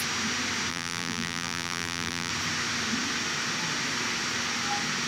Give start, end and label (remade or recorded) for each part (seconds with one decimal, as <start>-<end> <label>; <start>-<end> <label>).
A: 0.0-0.7 recorded; 0.7-2.3 remade; 2.3-5.1 recorded